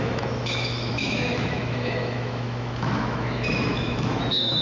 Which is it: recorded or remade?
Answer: remade